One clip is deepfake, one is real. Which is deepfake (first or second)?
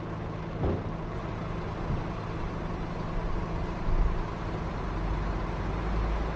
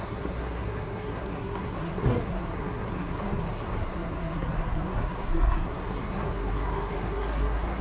second